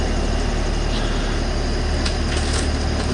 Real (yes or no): yes